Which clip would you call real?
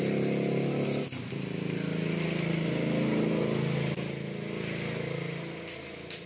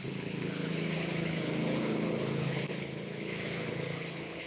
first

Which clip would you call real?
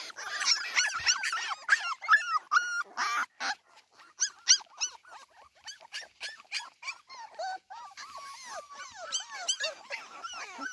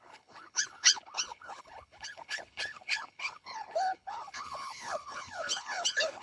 first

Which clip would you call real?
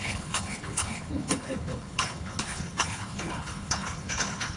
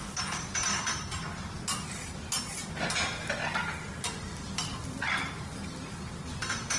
second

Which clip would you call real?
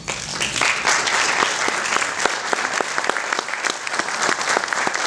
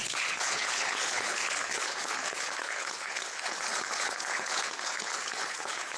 first